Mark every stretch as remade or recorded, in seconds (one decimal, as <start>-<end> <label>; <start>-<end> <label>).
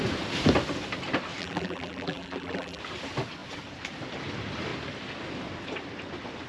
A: 0.0-1.4 recorded; 1.4-2.8 remade; 2.8-6.5 recorded